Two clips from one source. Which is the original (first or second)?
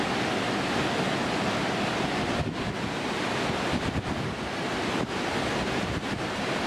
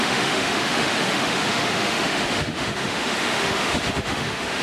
first